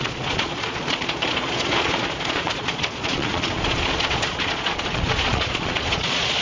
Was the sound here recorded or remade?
remade